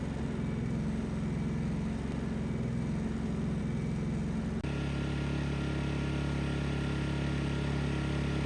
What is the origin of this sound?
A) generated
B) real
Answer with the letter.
B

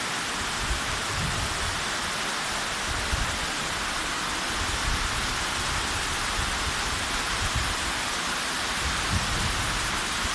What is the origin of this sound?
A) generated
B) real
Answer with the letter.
B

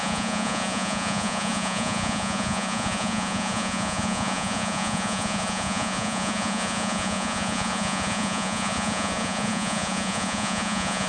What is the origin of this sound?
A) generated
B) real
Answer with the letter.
A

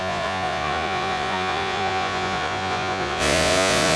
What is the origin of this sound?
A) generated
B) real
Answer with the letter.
A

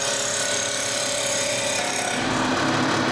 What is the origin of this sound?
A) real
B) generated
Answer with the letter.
A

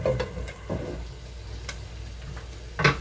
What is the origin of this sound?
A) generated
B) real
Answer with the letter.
B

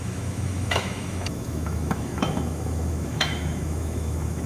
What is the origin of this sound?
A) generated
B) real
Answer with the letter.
A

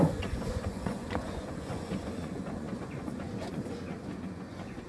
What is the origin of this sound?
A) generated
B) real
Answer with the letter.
A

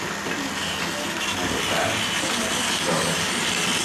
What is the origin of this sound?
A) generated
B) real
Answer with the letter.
B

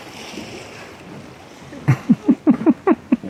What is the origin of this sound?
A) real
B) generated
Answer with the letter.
A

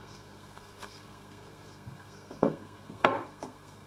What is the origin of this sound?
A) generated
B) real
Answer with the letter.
A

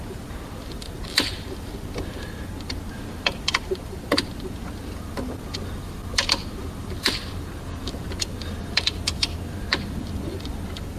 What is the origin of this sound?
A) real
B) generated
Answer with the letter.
B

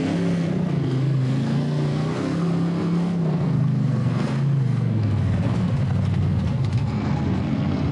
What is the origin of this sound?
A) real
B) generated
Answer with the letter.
B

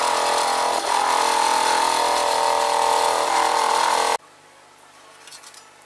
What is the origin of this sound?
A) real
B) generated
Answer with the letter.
A